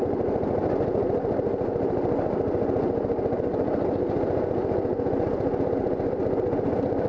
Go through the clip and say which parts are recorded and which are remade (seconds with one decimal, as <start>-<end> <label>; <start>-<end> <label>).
0.0-7.1 recorded